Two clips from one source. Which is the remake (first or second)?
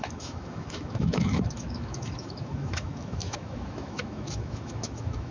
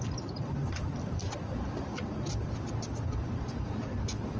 first